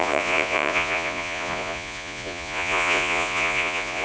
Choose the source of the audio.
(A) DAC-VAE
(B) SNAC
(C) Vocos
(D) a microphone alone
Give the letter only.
C